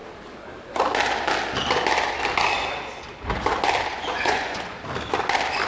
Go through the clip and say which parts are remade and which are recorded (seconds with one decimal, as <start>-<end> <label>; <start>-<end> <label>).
0.0-3.9 recorded; 3.9-4.8 remade; 4.8-5.7 recorded